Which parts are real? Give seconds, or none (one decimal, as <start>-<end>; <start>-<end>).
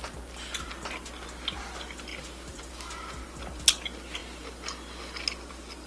0.0-5.9